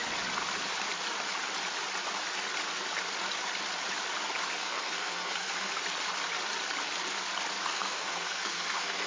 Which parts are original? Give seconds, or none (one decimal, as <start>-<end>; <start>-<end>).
0.0-4.6; 5.7-7.7